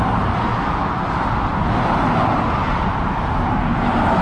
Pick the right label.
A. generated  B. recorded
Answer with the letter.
B